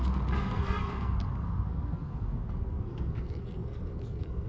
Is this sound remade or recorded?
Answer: remade